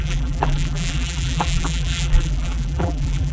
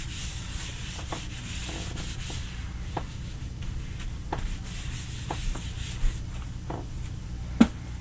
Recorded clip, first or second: second